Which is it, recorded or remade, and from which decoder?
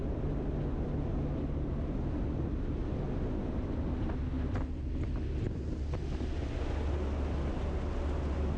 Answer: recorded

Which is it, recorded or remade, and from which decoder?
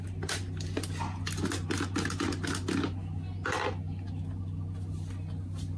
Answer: recorded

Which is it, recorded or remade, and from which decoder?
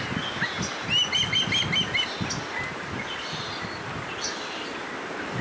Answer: recorded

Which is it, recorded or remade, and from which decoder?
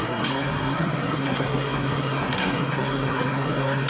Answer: remade, codec, SNAC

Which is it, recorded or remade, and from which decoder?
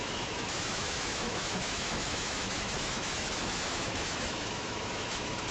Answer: remade, autoencoder, DAC-VAE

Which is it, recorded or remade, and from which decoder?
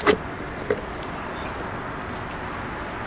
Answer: recorded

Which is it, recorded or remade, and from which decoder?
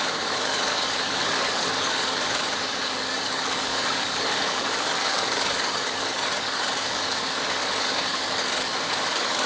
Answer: remade, codec, DAC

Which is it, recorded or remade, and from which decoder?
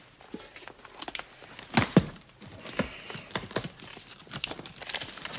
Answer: recorded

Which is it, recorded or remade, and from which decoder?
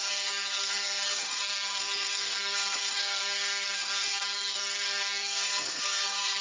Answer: remade, codec, SNAC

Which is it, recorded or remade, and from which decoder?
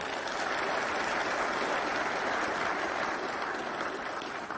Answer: recorded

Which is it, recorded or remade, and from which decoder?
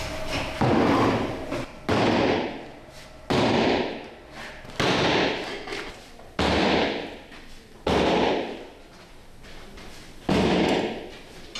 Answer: recorded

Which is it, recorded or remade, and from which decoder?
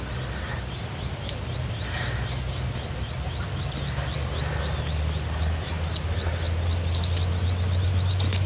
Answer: recorded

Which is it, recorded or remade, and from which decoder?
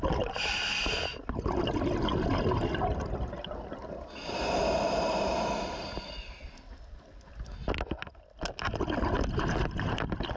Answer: recorded